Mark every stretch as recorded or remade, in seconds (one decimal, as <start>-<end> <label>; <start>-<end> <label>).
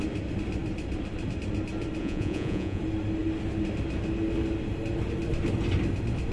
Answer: 0.0-2.0 recorded; 2.0-2.8 remade; 2.8-6.3 recorded